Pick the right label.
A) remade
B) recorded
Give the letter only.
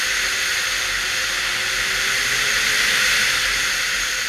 B